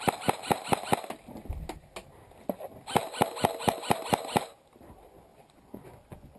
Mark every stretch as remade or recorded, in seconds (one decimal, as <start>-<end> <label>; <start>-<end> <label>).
0.0-5.3 recorded; 5.3-6.4 remade